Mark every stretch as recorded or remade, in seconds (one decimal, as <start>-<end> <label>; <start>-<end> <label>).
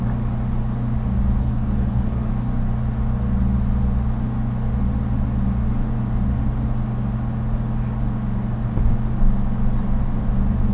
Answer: 0.0-1.4 recorded; 1.4-2.3 remade; 2.3-10.7 recorded